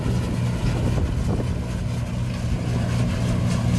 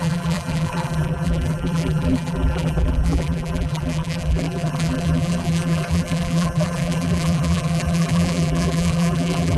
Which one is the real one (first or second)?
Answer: first